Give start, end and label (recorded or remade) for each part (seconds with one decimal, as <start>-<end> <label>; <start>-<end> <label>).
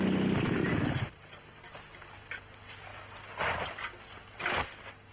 0.0-0.6 recorded; 0.6-1.6 remade; 1.6-5.1 recorded